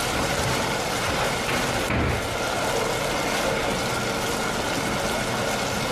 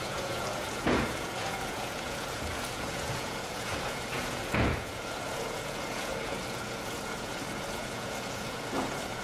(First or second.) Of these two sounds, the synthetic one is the second